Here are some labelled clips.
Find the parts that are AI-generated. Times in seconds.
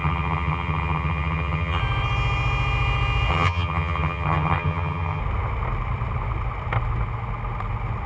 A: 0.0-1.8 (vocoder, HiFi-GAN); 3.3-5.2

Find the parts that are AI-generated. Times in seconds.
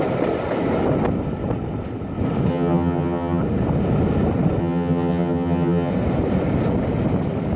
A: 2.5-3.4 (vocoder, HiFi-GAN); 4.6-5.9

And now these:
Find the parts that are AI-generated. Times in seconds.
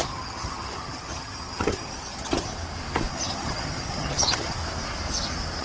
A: 0.0-2.5 (vocoder, HiFi-GAN); 3.1-4.6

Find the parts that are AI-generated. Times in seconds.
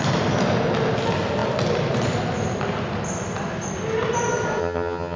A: 4.6-5.2 (vocoder, HiFi-GAN)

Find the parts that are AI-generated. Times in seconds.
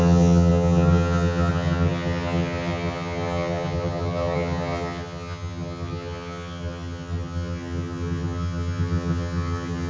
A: 0.0-9.9 (vocoder, HiFi-GAN)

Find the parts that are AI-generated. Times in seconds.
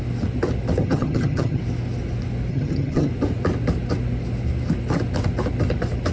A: 0.8-1.6 (vocoder, HiFi-GAN); 2.5-3.1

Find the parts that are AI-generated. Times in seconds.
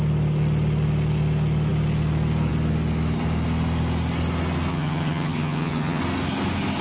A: 4.7-6.0 (vocoder, HiFi-GAN)